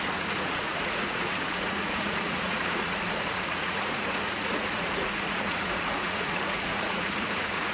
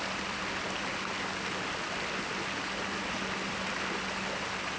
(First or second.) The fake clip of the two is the first